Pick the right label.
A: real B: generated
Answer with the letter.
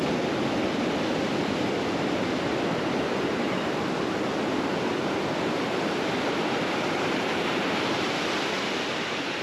A